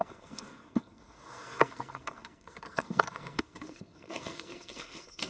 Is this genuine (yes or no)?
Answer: no